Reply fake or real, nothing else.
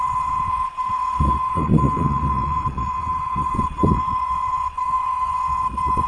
fake